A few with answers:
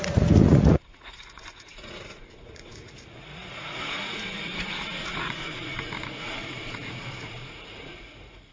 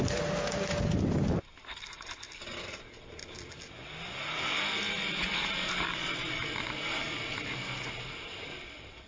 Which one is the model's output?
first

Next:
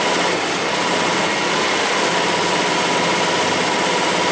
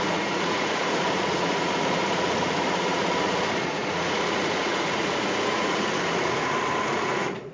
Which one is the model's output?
second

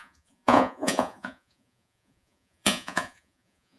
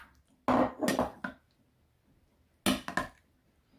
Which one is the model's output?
first